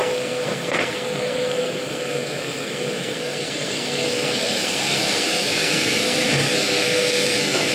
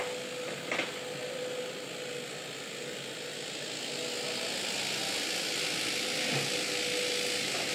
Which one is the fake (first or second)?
first